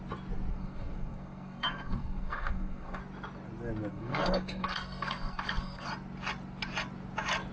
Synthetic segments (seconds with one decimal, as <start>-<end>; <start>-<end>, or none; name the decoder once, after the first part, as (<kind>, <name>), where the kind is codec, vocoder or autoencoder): 0.5-3.0 (codec, SNAC); 3.9-5.9